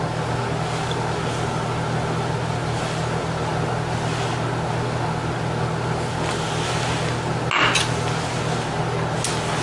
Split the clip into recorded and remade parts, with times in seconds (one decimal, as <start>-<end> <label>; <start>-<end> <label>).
0.0-9.6 recorded